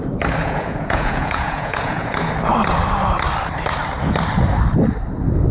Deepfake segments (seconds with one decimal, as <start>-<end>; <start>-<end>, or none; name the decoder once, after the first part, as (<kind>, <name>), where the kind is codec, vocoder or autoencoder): 0.4-2.3 (vocoder, Vocos)